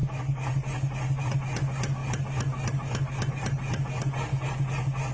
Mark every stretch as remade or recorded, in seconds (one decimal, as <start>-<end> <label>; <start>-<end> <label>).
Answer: 0.0-5.1 recorded